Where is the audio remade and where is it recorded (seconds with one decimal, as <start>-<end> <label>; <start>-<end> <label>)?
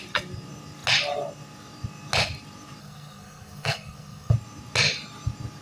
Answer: 0.0-2.8 recorded; 2.8-4.3 remade; 4.3-5.6 recorded